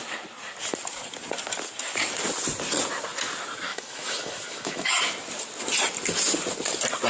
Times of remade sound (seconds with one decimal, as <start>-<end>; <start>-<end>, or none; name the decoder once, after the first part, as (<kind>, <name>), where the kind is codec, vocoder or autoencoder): 3.7-5.0 (autoencoder, DAC-VAE)